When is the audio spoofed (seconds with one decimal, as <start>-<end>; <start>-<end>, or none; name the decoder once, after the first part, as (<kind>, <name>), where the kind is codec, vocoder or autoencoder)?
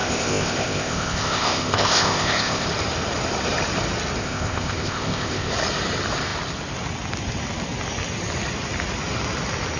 0.0-2.7 (codec, ZipCodec); 4.2-5.5